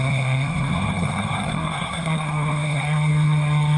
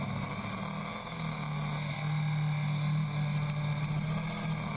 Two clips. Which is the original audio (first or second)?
second